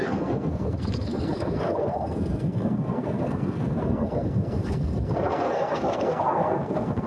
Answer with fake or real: fake